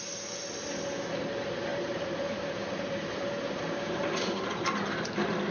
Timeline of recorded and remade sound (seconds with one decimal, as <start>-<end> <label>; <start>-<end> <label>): 0.0-1.7 recorded; 1.7-4.8 remade; 4.8-5.5 recorded